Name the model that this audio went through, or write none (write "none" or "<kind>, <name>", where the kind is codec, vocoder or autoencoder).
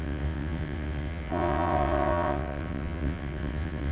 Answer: vocoder, WaveNeXt